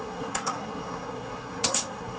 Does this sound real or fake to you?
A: fake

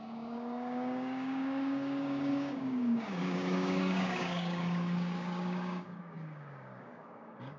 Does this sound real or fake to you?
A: fake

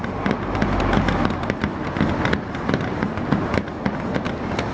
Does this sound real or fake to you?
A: real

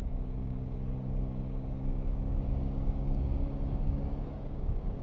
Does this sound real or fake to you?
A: fake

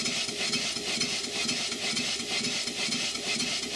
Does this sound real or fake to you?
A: real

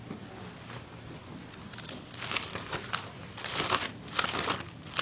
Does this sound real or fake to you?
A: real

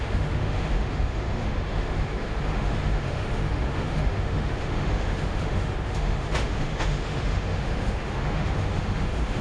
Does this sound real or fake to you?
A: fake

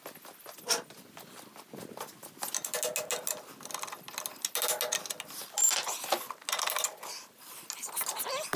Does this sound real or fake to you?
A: real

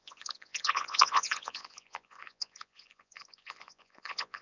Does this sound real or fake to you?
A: fake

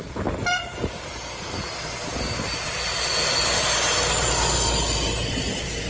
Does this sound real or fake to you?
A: real